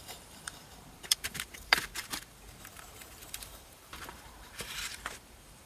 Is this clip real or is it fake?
fake